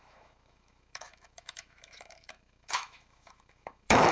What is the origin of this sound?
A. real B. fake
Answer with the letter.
B